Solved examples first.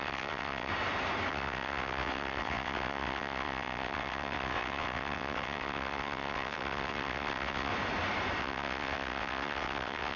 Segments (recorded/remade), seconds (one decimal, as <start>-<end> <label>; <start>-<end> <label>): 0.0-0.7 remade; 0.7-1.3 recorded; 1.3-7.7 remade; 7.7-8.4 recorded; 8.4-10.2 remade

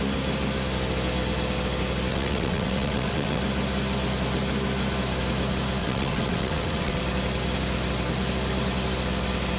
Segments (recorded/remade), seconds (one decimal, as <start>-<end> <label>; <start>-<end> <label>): 0.0-2.1 recorded; 2.1-3.4 remade; 3.4-5.8 recorded; 5.8-7.0 remade; 7.0-9.6 recorded

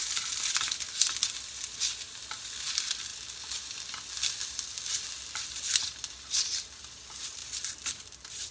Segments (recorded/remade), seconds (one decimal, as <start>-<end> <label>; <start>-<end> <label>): 0.0-3.1 remade; 3.1-6.1 recorded; 6.1-7.4 remade; 7.4-7.9 recorded; 7.9-8.5 remade

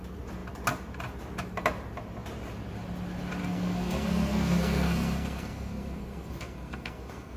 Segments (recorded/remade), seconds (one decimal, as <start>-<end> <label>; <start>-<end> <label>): 0.0-3.4 recorded; 3.4-7.4 remade

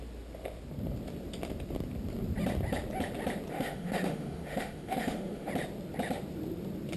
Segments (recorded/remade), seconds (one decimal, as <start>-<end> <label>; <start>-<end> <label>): 0.0-3.5 recorded; 3.5-5.5 remade; 5.5-7.0 recorded

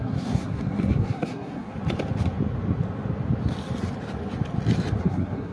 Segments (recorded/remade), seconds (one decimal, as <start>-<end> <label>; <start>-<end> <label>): 0.0-1.7 remade; 1.7-5.0 recorded; 5.0-5.5 remade

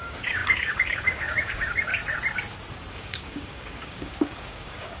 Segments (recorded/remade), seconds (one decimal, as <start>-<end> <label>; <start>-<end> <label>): 0.0-1.9 remade; 1.9-2.9 recorded; 2.9-5.0 remade

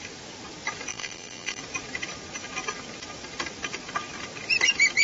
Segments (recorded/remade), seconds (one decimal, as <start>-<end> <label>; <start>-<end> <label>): 0.0-0.9 recorded; 0.9-1.6 remade; 1.6-5.0 recorded